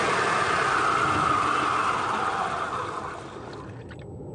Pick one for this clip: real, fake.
real